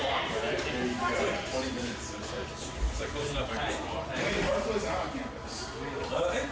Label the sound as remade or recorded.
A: recorded